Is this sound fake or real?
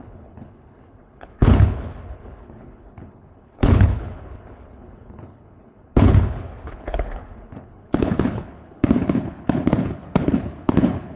fake